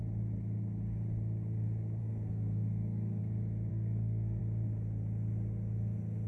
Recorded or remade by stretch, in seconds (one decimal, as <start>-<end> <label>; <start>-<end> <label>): 0.0-2.0 recorded; 2.0-3.2 remade; 3.2-3.7 recorded; 3.7-4.4 remade; 4.4-6.3 recorded